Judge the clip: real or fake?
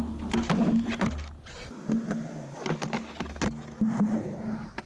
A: real